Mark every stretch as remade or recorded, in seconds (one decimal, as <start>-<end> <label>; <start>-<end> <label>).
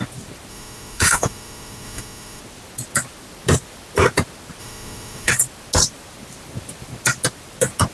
0.0-0.5 recorded; 0.5-2.4 remade; 2.4-4.6 recorded; 4.6-5.3 remade; 5.3-7.9 recorded